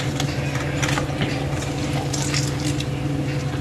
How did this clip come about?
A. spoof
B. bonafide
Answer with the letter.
A